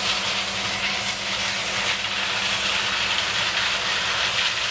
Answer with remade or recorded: recorded